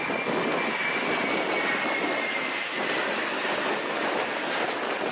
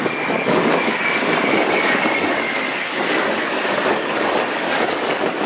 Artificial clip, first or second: second